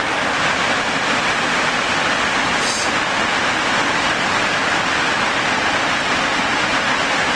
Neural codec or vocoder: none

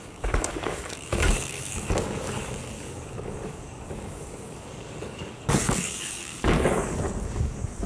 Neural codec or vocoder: codec, DAC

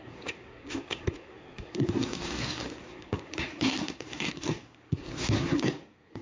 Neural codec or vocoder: codec, SNAC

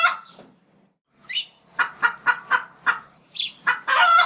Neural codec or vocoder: none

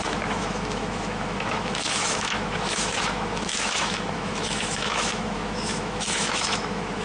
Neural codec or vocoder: autoencoder, DAC-VAE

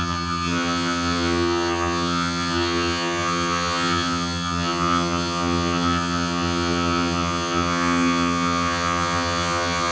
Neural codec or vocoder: vocoder, HiFi-GAN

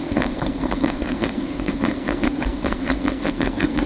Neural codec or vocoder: codec, SNAC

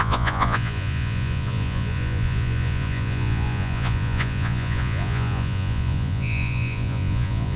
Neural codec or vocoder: vocoder, Vocos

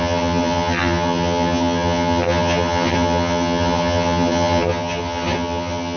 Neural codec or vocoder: vocoder, HiFi-GAN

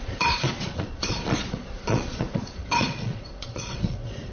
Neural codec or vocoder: vocoder, Vocos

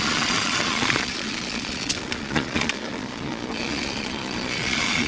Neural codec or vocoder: vocoder, Vocos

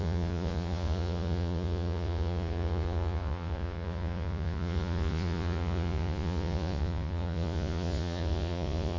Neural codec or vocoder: vocoder, Vocos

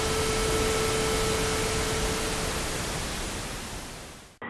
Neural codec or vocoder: none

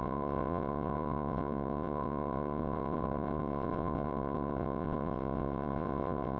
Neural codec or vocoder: vocoder, WaveNeXt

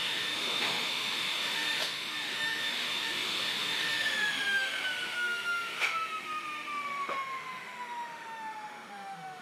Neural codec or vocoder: autoencoder, DAC-VAE